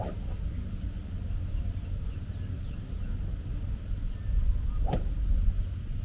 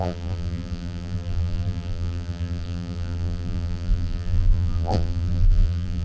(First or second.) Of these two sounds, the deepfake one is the second